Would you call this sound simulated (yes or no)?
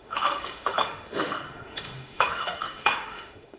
yes